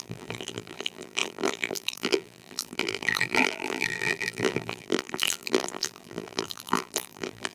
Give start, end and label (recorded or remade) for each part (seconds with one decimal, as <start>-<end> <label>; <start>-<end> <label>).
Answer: 0.0-7.5 remade